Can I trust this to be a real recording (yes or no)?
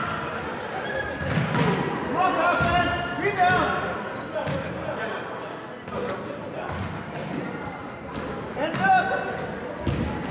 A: yes